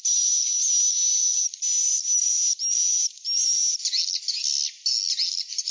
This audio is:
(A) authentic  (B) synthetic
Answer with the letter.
A